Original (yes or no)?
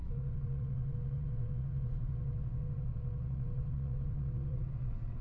no